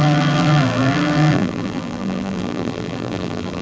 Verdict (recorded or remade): remade